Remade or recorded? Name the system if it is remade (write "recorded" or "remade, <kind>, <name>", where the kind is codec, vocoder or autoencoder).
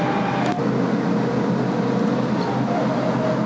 recorded